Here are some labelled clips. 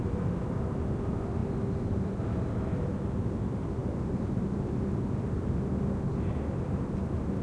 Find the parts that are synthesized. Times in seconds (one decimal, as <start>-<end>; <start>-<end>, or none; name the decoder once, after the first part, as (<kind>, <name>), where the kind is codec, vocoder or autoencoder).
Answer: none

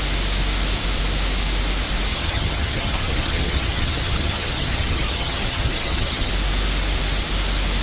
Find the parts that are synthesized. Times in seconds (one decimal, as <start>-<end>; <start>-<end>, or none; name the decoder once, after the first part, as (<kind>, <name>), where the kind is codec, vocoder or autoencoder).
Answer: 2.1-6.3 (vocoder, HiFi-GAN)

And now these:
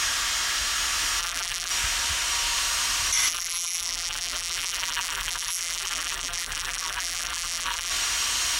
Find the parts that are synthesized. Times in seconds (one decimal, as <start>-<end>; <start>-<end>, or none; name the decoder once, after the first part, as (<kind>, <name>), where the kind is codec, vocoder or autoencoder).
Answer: 1.2-1.7 (vocoder, BigVGAN v2); 3.3-7.9

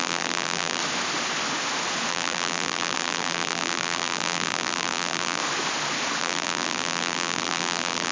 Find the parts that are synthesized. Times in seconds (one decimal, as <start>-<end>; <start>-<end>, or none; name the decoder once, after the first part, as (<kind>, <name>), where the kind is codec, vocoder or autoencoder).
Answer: 0.0-0.8 (vocoder, BigVGAN v2); 2.1-5.4; 6.2-8.1

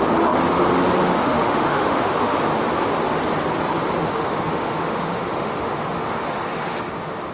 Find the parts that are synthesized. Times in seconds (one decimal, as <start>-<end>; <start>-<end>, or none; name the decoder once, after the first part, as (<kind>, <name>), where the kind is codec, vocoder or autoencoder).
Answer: 1.0-2.4 (autoencoder, DAC-VAE); 4.0-7.3

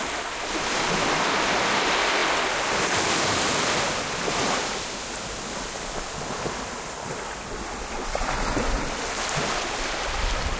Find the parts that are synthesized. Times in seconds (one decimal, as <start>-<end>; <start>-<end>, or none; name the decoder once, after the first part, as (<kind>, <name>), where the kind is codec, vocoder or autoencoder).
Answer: none

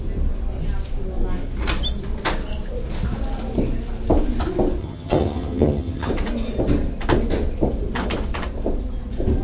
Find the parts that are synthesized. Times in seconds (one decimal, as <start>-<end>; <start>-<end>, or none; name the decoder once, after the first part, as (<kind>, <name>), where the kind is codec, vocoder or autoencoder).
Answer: 4.8-6.1 (vocoder, HiFi-GAN)